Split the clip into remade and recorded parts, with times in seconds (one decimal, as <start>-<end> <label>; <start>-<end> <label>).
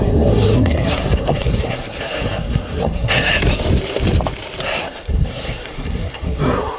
0.0-3.3 remade; 3.3-4.8 recorded; 4.8-6.8 remade